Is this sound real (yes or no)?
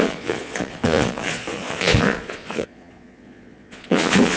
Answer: no